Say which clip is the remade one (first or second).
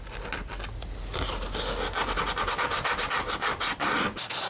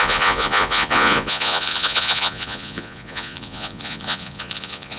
second